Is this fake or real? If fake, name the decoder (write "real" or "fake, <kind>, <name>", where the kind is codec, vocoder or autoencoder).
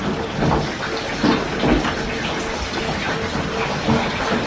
real